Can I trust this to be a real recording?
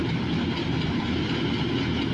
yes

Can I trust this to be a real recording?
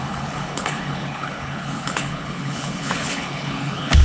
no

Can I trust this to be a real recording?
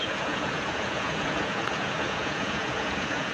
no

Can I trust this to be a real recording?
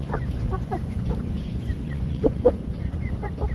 no